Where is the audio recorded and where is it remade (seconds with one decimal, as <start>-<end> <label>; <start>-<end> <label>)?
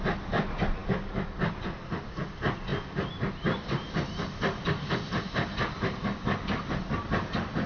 0.0-7.7 recorded